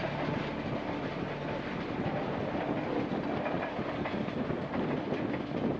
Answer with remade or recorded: recorded